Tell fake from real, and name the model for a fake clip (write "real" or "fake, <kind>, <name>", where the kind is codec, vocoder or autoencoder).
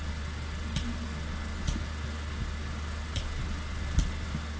real